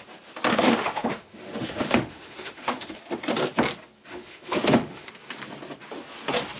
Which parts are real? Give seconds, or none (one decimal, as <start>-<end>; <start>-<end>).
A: 0.0-0.5; 3.0-4.1; 5.1-6.6